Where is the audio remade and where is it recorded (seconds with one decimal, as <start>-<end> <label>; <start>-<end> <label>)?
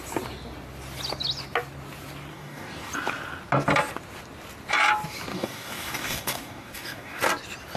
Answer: 0.0-2.3 recorded; 2.3-2.9 remade; 2.9-5.3 recorded; 5.3-7.2 remade; 7.2-7.8 recorded